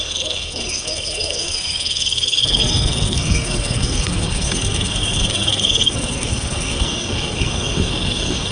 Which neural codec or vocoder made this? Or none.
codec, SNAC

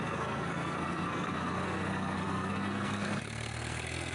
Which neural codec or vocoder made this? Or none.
codec, SNAC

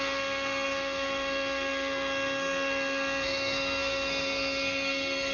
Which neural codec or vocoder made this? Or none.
codec, SNAC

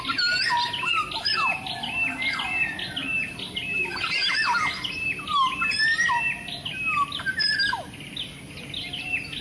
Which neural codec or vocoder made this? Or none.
none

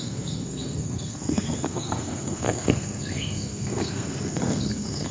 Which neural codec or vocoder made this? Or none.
codec, SNAC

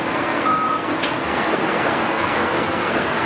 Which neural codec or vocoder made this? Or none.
codec, SNAC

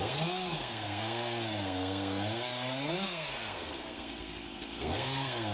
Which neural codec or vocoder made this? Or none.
codec, SNAC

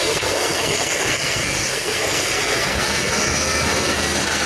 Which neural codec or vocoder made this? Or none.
codec, SNAC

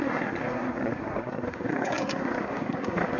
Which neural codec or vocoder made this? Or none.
codec, SNAC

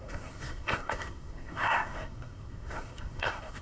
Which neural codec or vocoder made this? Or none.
codec, SNAC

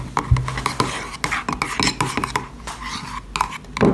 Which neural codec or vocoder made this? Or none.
none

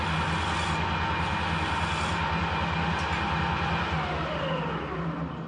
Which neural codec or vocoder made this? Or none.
none